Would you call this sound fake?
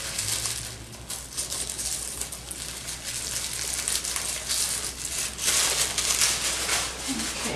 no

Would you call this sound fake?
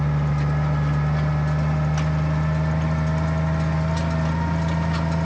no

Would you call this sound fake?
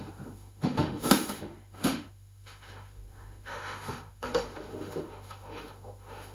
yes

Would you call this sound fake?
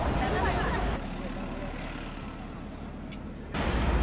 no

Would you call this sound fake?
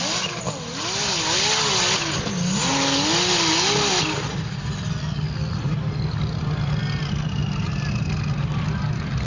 no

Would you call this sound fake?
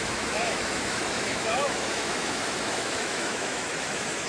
yes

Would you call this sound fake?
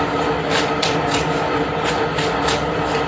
no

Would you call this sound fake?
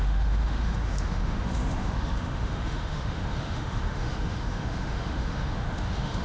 yes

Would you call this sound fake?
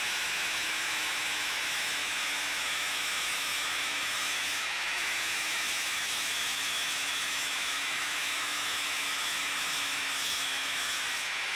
yes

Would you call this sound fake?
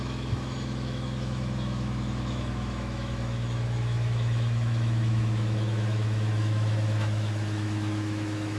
yes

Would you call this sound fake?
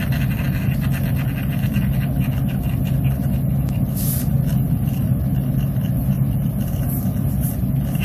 no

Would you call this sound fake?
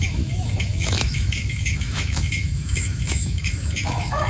yes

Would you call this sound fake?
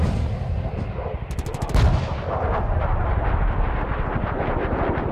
no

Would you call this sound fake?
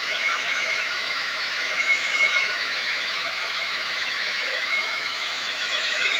yes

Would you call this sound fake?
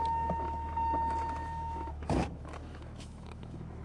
yes